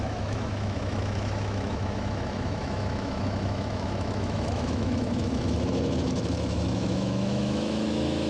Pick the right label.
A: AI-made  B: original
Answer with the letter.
A